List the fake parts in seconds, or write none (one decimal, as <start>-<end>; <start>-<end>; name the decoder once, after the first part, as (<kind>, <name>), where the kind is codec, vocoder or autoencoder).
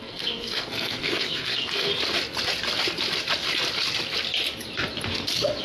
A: 0.0-1.9 (codec, SNAC)